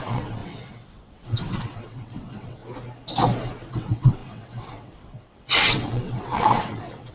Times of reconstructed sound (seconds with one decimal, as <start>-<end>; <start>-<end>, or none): 0.0-2.6; 3.7-7.1

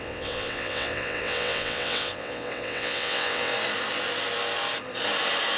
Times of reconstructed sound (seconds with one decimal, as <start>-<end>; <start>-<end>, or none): 0.0-3.5

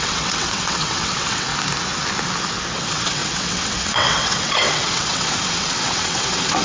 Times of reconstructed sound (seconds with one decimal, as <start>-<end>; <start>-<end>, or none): 0.0-1.5; 2.7-6.6

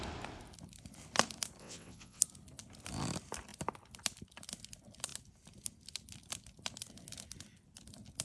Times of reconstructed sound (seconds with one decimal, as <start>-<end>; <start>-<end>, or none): 1.6-2.2

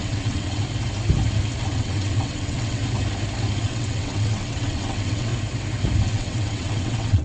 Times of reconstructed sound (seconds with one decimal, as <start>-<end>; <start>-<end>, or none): 0.0-0.6; 1.6-2.8; 3.6-5.3; 6.0-7.2